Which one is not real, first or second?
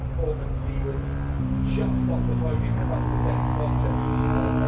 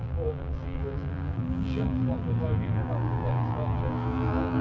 second